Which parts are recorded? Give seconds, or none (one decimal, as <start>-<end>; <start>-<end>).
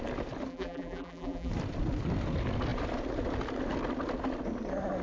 0.0-0.5; 1.5-5.0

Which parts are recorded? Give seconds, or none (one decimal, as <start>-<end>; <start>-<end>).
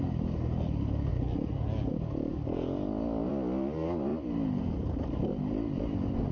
0.0-6.3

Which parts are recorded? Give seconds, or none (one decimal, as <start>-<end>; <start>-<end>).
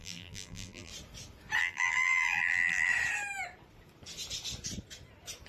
0.9-1.6; 2.9-5.5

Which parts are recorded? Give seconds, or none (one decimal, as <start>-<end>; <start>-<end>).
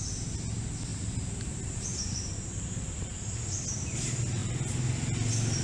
0.0-5.6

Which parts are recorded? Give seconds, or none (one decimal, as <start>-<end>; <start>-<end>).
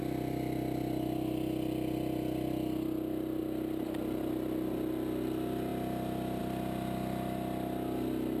0.0-8.4